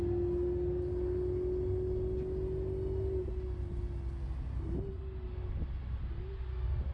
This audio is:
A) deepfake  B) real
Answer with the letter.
B